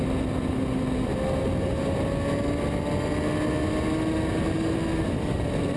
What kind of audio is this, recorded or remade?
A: recorded